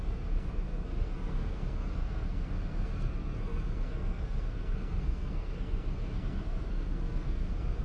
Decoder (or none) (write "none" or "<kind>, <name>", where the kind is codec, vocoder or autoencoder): codec, SNAC